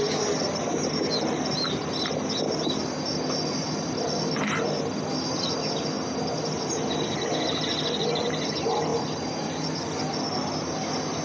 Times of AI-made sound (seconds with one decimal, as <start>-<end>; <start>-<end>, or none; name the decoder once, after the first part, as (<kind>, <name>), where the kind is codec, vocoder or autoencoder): none